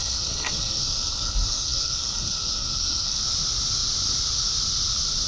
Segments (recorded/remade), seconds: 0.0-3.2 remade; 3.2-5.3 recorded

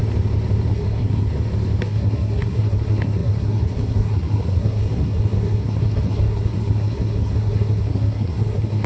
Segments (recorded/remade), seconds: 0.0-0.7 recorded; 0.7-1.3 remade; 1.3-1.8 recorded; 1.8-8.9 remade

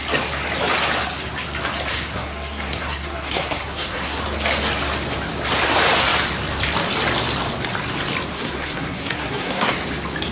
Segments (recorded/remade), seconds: 0.0-1.9 recorded; 1.9-4.2 remade; 4.2-8.3 recorded; 8.3-9.7 remade; 9.7-10.3 recorded

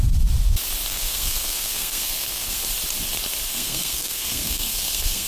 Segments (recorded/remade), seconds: 0.0-0.9 recorded; 0.9-2.6 remade; 2.6-3.5 recorded; 3.5-5.3 remade

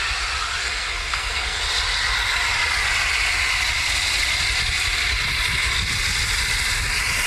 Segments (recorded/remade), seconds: 0.0-0.6 recorded; 0.6-1.6 remade; 1.6-7.3 recorded

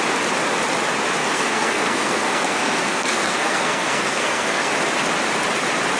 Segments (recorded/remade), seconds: 0.0-1.2 recorded; 1.2-4.7 remade; 4.7-6.0 recorded

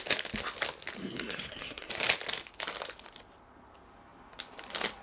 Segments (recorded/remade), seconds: 0.0-1.0 recorded; 1.0-1.9 remade; 1.9-5.0 recorded

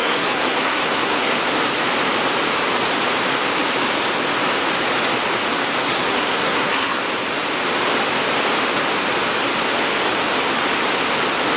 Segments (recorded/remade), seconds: 0.0-1.4 remade; 1.4-5.8 recorded; 5.8-7.0 remade; 7.0-11.6 recorded